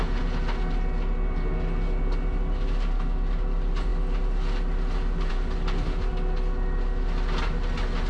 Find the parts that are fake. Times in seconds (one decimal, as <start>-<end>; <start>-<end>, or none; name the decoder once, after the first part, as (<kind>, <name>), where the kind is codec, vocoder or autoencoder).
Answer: none